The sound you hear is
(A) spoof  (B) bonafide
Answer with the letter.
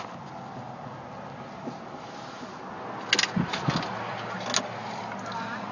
B